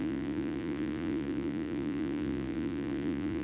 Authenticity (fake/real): fake